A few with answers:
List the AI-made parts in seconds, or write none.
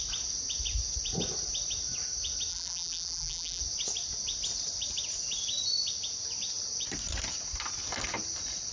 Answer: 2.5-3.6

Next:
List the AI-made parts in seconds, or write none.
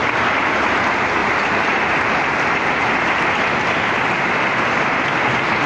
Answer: 1.2-2.2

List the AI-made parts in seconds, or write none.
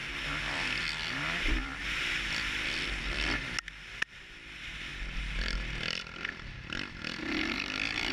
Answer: none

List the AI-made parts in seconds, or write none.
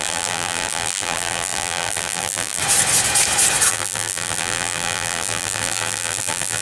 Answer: 0.0-2.6; 3.7-6.6